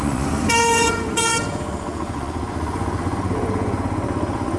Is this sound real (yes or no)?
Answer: no